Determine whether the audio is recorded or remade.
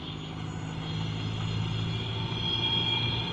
recorded